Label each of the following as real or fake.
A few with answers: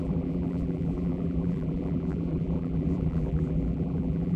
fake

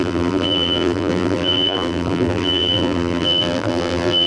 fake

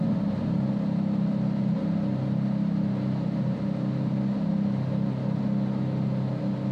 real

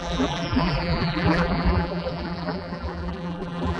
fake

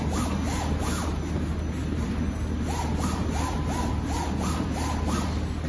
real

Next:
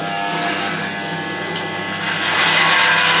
fake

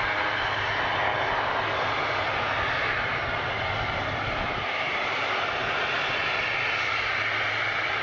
real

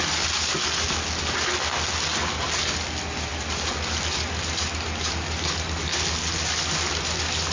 real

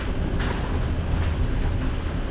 real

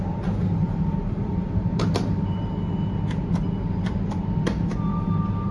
fake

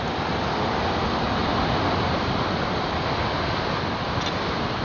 real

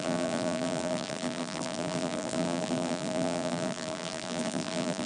fake